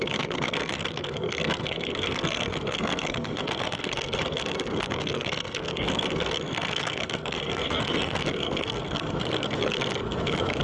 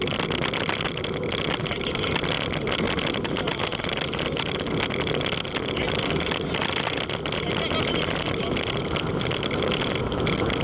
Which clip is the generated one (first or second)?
first